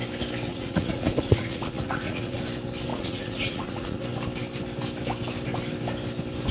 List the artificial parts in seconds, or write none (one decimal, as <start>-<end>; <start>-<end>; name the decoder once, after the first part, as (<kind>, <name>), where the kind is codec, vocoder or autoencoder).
0.5-2.4 (vocoder, Vocos); 2.9-4.0